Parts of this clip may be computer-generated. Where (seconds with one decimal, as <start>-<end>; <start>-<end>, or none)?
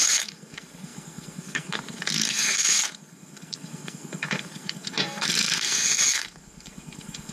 0.0-7.3